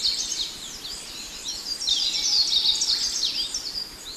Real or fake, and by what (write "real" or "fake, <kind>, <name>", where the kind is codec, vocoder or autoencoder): real